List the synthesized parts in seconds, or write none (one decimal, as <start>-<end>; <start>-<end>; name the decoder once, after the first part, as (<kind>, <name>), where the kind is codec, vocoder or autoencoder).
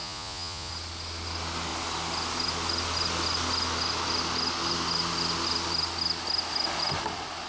0.0-0.7 (vocoder, Vocos)